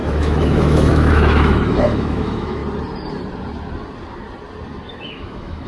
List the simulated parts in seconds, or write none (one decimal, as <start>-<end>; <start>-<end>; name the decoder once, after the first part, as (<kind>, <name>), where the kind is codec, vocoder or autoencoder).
0.0-2.6 (autoencoder, DAC-VAE); 4.9-5.7